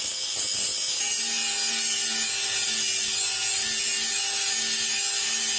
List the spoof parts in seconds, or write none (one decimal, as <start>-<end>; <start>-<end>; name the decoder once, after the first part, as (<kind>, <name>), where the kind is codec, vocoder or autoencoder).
none